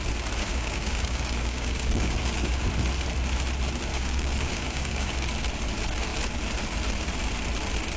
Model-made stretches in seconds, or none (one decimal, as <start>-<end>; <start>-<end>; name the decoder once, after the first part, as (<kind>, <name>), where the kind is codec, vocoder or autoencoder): 0.4-2.7 (codec, DAC); 3.9-5.3